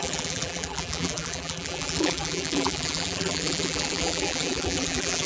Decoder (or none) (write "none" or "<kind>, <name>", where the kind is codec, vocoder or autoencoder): vocoder, BigVGAN v2